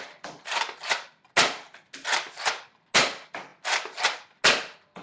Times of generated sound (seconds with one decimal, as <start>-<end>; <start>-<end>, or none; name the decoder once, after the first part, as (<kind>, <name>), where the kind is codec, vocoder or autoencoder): none